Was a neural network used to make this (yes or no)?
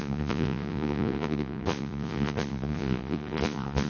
yes